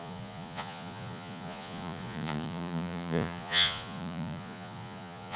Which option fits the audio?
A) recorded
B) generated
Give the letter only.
B